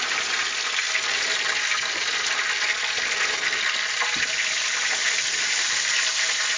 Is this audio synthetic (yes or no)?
no